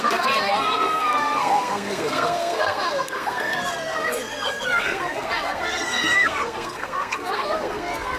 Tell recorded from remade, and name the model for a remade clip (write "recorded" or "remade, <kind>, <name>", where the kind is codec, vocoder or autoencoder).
remade, codec, SNAC